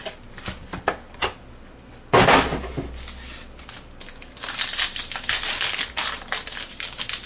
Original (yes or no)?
yes